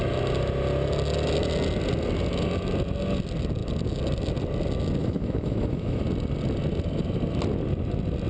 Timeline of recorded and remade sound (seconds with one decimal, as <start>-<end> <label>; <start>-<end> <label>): 0.0-5.0 recorded; 5.0-6.0 remade; 6.0-8.3 recorded